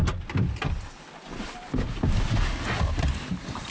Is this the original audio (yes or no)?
yes